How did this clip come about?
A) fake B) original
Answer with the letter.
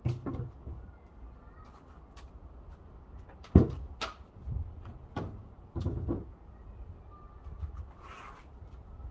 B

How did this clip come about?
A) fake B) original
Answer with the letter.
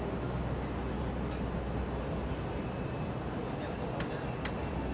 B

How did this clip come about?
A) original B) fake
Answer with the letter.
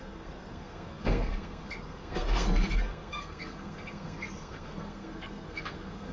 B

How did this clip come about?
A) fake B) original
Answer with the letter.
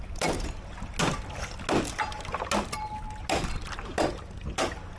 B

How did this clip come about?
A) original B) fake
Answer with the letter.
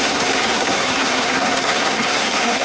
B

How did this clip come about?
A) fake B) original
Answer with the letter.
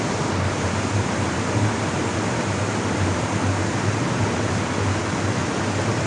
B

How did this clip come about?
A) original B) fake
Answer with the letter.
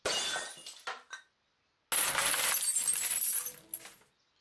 A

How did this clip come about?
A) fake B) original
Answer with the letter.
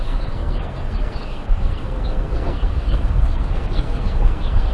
A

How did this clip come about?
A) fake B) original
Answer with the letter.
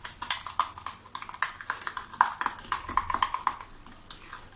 B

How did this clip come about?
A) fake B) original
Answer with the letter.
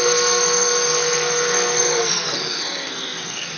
A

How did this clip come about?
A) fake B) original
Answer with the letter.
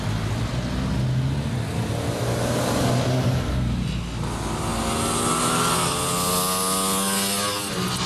B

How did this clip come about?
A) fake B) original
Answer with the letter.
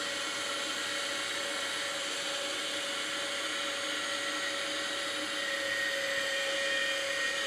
B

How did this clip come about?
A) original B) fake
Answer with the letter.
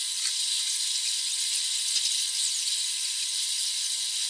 A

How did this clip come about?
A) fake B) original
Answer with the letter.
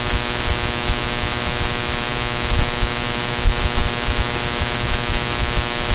B